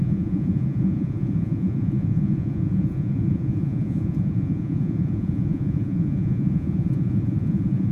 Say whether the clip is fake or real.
fake